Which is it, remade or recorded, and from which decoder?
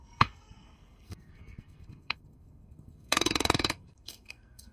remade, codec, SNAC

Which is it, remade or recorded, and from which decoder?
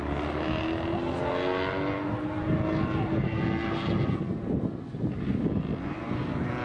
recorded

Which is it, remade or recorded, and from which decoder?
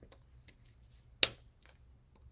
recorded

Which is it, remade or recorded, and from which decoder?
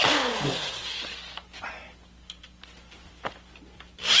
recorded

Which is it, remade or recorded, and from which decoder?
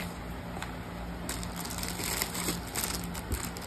recorded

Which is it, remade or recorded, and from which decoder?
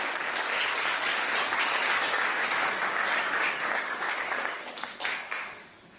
remade, codec, DAC